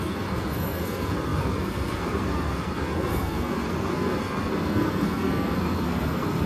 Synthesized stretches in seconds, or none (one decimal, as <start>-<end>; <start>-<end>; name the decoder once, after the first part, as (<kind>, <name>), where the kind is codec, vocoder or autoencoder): 0.0-6.5 (codec, SNAC)